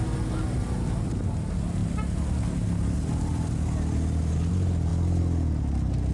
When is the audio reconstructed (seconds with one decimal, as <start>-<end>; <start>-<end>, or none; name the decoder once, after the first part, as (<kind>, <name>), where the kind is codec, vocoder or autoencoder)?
none

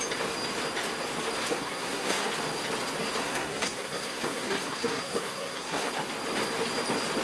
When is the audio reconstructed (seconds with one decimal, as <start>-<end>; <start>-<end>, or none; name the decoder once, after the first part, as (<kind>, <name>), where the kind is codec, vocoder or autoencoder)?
1.5-2.3 (codec, SNAC); 3.2-5.9

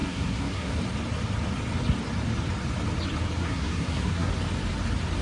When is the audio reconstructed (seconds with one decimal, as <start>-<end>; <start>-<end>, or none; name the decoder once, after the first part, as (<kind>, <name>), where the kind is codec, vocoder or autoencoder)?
0.0-0.8 (codec, SNAC); 3.4-4.3

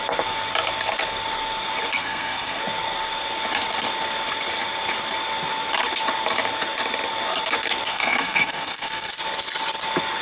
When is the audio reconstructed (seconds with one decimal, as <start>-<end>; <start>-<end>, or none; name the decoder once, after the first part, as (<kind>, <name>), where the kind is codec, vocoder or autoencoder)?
2.0-2.6 (codec, SNAC); 7.9-9.1

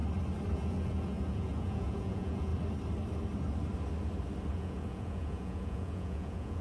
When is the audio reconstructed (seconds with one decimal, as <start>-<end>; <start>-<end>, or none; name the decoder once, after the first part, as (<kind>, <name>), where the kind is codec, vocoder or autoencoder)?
0.5-2.5 (vocoder, Vocos); 4.5-6.6